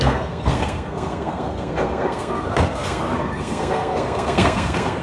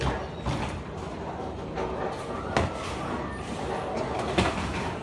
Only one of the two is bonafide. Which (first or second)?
second